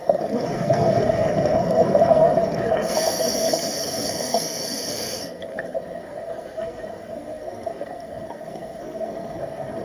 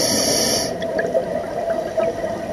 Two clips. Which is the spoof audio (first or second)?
first